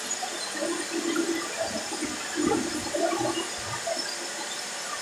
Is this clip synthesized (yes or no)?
no